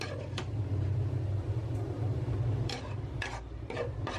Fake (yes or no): no